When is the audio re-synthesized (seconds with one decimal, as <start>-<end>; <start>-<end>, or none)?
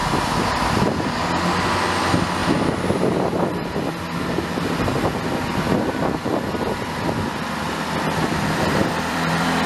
0.0-1.0; 2.4-4.4; 6.0-6.7; 8.8-9.7